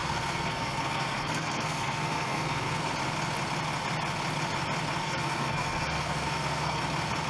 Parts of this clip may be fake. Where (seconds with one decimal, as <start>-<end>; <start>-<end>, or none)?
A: 0.0-2.9; 5.0-6.8